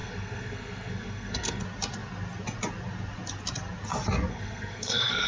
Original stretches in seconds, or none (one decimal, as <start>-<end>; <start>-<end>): 1.6-4.3